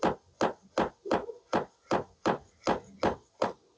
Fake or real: real